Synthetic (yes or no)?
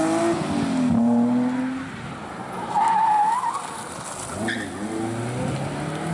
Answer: no